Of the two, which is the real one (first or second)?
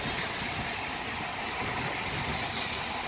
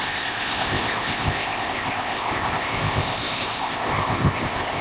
first